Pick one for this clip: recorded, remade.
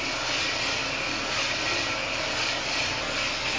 recorded